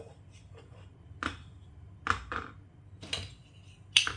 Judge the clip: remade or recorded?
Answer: recorded